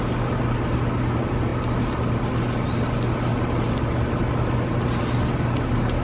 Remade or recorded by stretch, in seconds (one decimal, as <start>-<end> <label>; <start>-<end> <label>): 0.0-6.0 recorded